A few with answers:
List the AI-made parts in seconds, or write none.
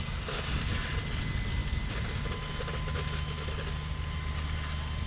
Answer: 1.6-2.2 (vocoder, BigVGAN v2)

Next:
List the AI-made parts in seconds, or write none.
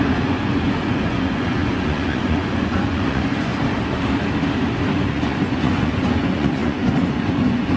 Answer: 0.0-3.5 (vocoder, Vocos); 4.9-7.8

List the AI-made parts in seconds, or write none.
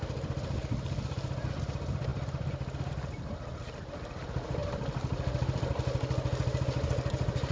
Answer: none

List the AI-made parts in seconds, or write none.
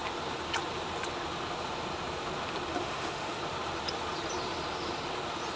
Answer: 2.8-3.4 (autoencoder, DAC-VAE)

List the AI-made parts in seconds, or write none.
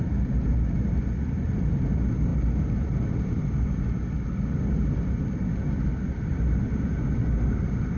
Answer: none